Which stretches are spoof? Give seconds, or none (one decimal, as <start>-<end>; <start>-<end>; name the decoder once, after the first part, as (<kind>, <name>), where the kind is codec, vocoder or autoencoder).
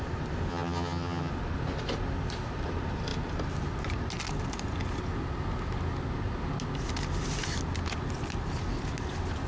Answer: 0.5-1.3 (vocoder, HiFi-GAN)